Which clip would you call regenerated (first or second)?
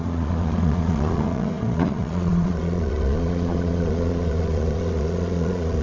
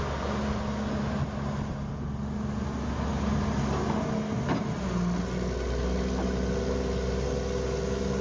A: first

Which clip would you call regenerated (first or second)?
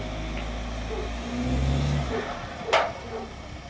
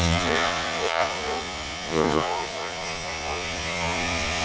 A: second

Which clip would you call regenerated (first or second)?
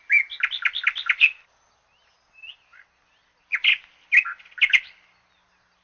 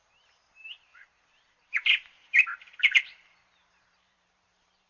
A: second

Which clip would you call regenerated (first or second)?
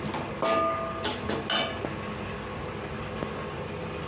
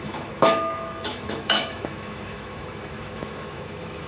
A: second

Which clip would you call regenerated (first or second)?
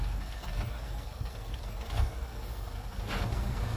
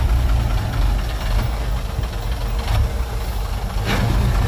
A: first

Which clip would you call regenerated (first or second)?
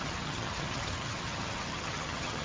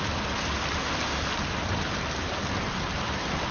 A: first